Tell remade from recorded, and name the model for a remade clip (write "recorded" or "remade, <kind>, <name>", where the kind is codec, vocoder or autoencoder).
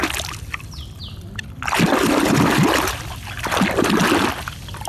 recorded